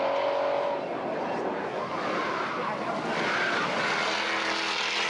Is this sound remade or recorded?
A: recorded